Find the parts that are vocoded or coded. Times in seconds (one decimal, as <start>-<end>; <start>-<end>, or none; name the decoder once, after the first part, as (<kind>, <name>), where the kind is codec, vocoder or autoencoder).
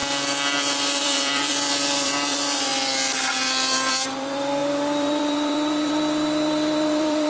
0.0-7.3 (vocoder, BigVGAN v2)